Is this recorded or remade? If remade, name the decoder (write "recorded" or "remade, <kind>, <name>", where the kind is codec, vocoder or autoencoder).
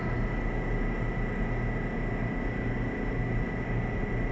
recorded